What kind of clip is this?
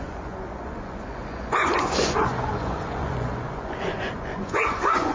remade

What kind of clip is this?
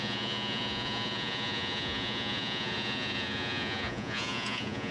remade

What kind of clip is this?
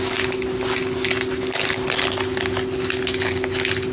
recorded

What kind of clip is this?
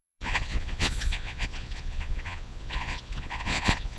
remade